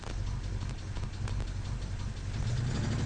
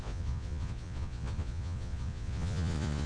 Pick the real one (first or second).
first